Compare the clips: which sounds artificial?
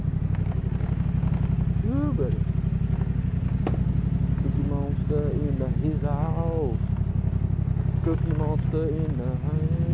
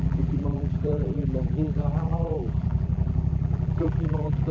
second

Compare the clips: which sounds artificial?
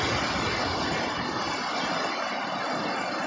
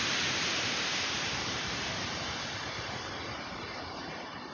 second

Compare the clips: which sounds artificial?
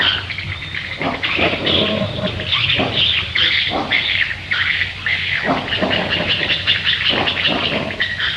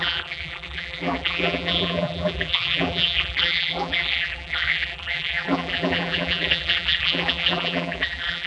second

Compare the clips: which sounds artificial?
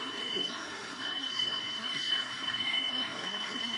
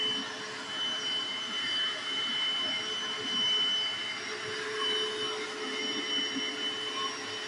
first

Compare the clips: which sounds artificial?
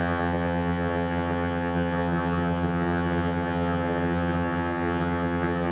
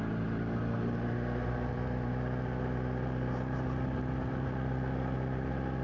first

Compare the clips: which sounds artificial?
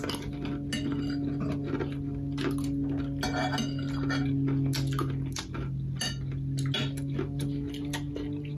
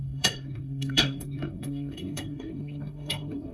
second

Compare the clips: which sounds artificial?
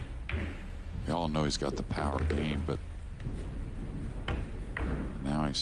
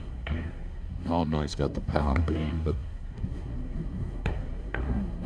second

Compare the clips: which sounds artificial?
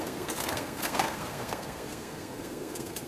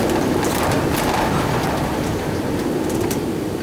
first